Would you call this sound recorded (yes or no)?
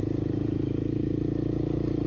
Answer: yes